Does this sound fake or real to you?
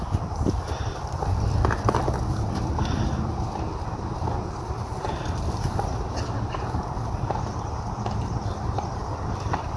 real